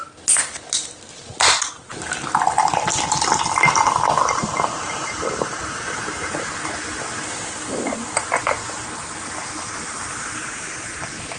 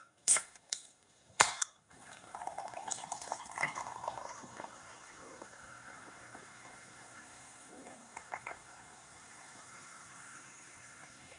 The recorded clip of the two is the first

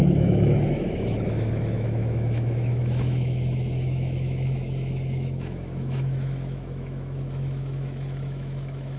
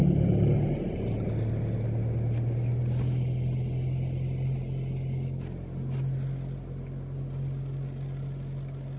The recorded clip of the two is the second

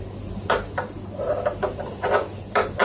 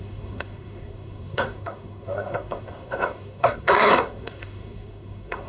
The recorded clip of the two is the first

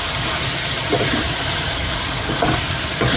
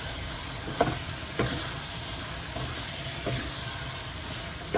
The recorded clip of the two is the second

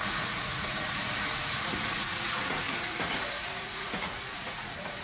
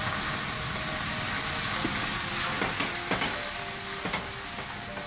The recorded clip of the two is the second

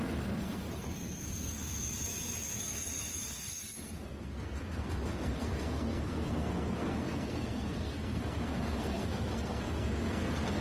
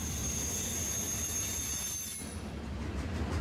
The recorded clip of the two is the second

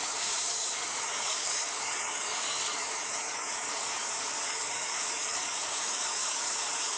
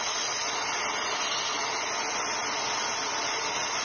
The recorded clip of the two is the second